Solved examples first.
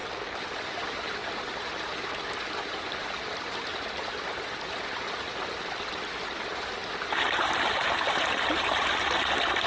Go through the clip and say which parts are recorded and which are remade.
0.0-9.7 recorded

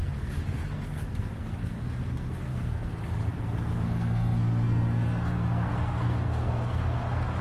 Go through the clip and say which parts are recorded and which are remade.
0.0-7.4 remade

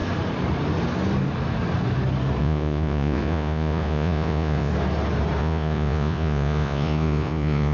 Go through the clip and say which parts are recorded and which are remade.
0.0-2.4 recorded; 2.4-4.7 remade; 4.7-5.4 recorded; 5.4-7.7 remade